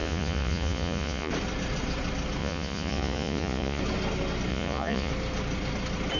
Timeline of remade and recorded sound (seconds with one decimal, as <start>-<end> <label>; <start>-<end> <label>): 0.0-1.3 remade; 1.3-2.4 recorded; 2.4-3.8 remade; 3.8-4.5 recorded; 4.5-5.1 remade; 5.1-6.2 recorded